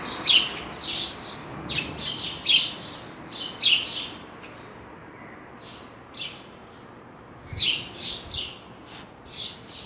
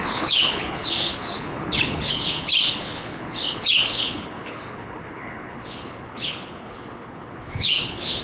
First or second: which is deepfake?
second